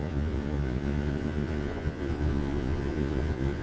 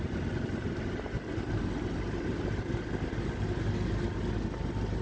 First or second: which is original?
second